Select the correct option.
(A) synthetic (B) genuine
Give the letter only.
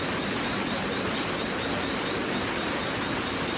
B